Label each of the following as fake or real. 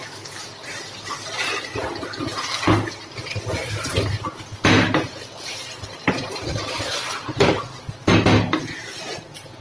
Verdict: real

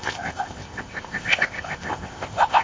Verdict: fake